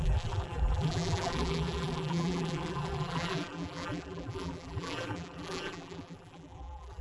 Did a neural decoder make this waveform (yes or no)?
yes